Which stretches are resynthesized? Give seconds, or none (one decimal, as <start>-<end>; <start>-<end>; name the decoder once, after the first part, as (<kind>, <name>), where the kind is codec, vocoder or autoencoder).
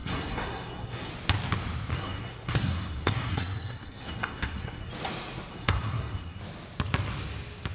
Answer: 0.0-1.1 (codec, SNAC); 1.9-4.9; 5.5-6.4